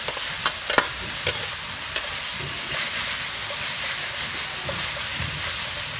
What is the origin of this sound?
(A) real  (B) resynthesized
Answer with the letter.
A